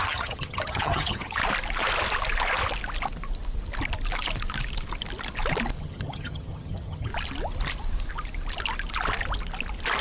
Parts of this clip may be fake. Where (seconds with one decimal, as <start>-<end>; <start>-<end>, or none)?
0.0-1.4; 5.8-7.1